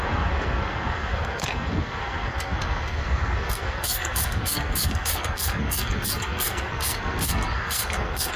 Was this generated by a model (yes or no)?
yes